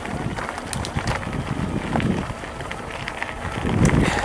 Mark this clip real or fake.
real